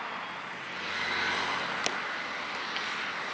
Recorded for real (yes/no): yes